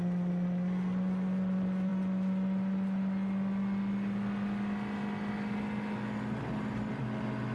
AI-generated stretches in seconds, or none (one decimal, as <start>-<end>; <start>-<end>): none